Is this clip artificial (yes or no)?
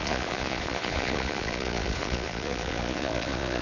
yes